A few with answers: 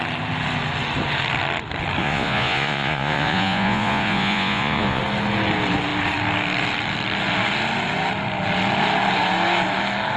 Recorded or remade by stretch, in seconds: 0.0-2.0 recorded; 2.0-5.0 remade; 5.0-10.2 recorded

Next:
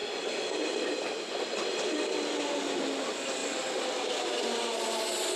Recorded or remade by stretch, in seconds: 0.0-5.4 recorded

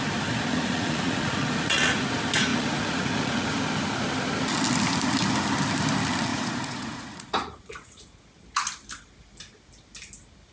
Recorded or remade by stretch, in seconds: 0.0-0.5 recorded; 0.5-2.0 remade; 2.0-2.5 recorded; 2.5-3.6 remade; 3.6-6.3 recorded; 6.3-8.2 remade; 8.2-10.5 recorded

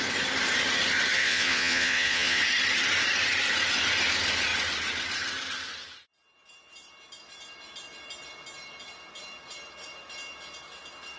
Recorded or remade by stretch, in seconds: 0.0-1.2 recorded; 1.2-2.4 remade; 2.4-11.2 recorded

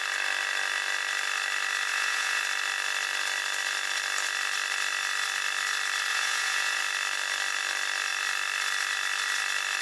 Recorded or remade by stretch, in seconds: 0.0-1.9 recorded; 1.9-2.4 remade; 2.4-6.1 recorded; 6.1-6.8 remade; 6.8-9.8 recorded

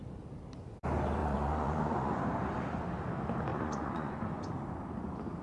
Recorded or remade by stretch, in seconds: 0.0-1.2 recorded; 1.2-2.2 remade; 2.2-3.5 recorded; 3.5-4.5 remade; 4.5-5.4 recorded

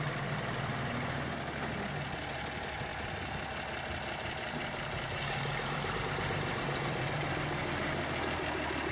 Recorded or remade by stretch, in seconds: 0.0-8.9 recorded